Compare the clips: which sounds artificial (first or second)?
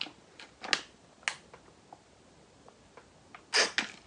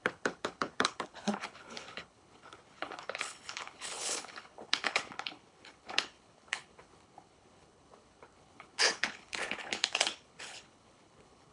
second